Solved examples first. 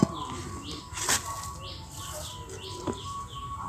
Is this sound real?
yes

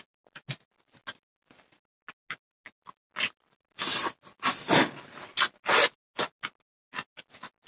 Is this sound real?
yes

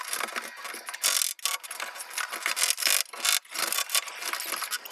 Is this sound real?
yes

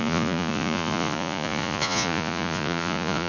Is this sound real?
no